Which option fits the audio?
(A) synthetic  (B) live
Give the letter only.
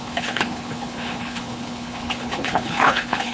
A